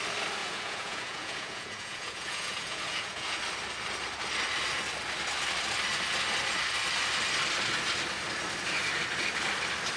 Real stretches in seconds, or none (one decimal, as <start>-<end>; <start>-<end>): 0.0-0.4; 3.4-10.0